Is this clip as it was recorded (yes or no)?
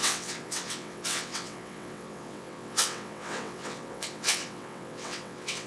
no